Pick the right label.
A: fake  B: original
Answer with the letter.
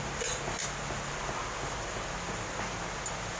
B